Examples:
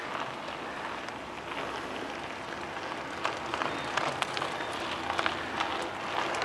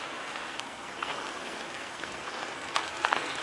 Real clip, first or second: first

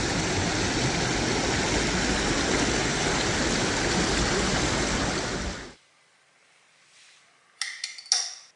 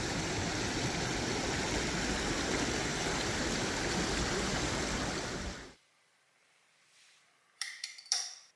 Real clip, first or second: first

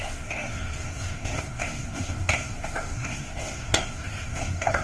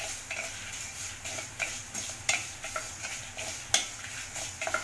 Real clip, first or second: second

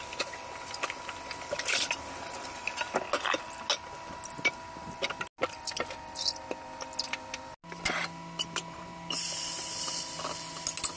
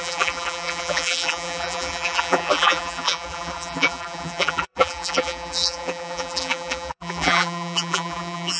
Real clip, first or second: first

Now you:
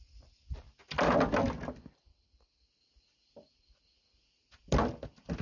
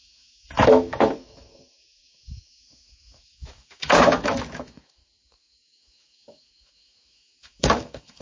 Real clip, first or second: first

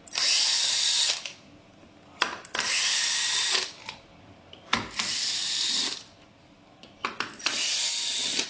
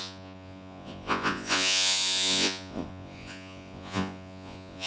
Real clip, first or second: first